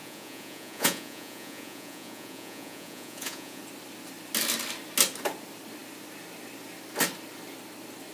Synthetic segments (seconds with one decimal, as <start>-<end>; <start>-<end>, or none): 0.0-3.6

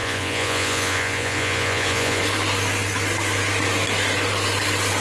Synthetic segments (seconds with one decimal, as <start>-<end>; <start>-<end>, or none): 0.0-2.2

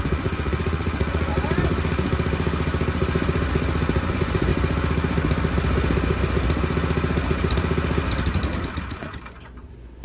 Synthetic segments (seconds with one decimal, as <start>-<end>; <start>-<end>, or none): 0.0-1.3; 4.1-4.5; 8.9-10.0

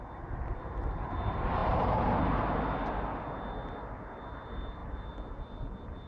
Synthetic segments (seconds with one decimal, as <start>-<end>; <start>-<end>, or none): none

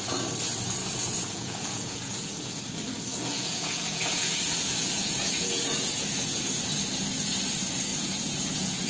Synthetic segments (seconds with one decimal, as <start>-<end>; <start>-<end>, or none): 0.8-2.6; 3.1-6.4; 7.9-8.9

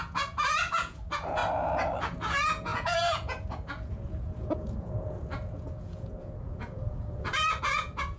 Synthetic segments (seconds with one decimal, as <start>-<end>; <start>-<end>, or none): 0.0-1.4; 2.0-8.2